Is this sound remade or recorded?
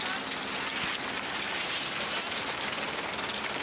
recorded